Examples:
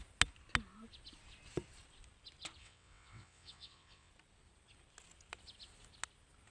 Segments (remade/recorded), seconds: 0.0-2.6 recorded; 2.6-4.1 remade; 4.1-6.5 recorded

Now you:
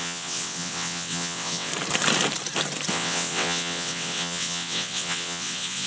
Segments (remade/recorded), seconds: 0.0-1.7 remade; 1.7-2.9 recorded; 2.9-5.9 remade

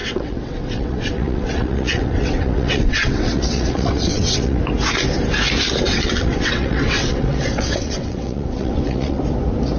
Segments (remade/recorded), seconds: 0.0-4.6 remade; 4.6-5.9 recorded; 5.9-9.2 remade; 9.2-9.8 recorded

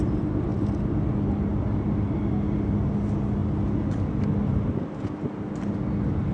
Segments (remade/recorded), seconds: 0.0-6.3 recorded

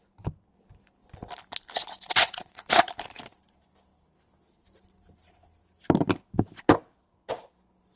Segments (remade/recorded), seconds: 0.0-1.8 recorded; 1.8-2.9 remade; 2.9-8.0 recorded

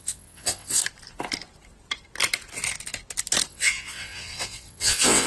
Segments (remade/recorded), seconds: 0.0-0.8 remade; 0.8-3.5 recorded; 3.5-5.3 remade